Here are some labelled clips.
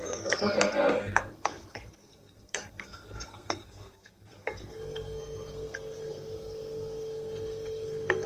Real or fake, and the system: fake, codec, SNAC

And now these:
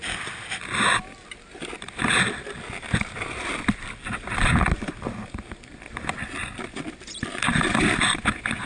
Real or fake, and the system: real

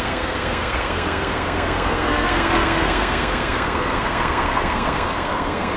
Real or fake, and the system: fake, codec, SNAC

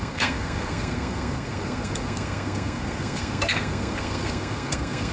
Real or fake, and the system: fake, codec, SNAC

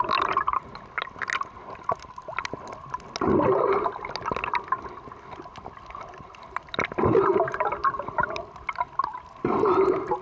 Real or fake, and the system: real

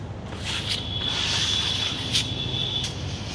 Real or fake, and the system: real